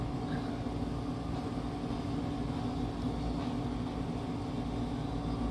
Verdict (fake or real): real